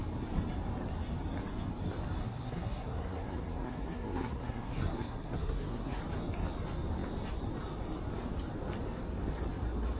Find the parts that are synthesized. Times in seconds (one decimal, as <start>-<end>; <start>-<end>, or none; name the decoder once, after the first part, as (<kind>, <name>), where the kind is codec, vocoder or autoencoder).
2.2-6.0 (codec, SNAC)